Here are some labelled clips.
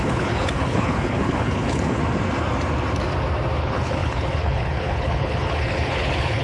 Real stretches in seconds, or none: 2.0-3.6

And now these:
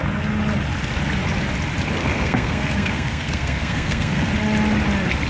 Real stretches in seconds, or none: 0.0-2.0; 4.3-5.3

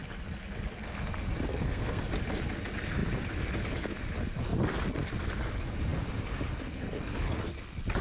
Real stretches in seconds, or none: 0.0-1.5; 2.0-8.0

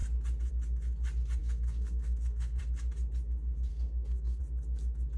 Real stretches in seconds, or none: 0.0-1.4; 2.6-3.7; 4.4-5.2

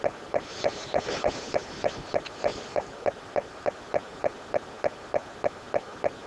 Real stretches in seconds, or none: 0.0-2.5; 3.8-6.3

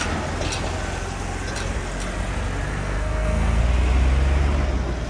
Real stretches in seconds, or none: 0.0-2.7; 3.6-5.1

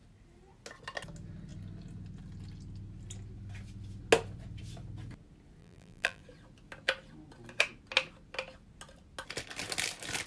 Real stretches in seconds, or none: 0.0-5.6; 6.2-10.3

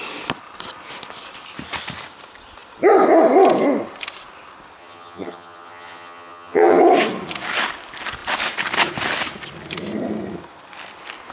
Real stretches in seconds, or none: 0.0-4.8; 6.8-11.3